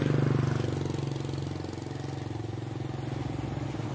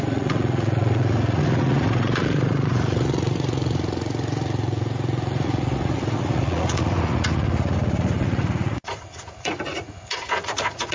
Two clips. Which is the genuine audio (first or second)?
first